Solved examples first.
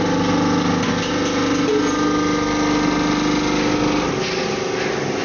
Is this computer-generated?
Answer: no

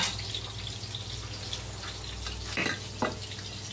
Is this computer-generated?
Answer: no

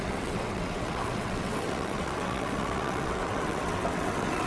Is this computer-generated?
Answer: yes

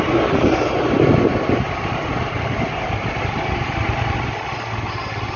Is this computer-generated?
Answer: no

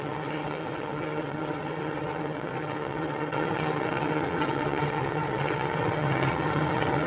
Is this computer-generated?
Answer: yes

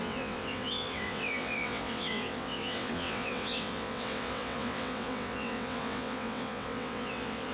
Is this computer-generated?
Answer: yes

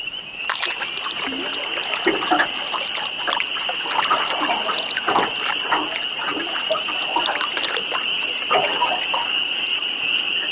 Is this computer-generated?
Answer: no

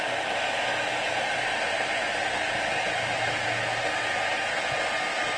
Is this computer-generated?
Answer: no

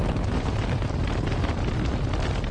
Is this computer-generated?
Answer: no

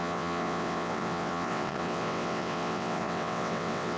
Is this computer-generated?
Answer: yes